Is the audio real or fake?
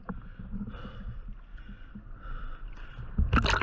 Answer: real